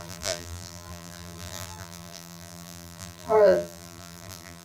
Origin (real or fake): fake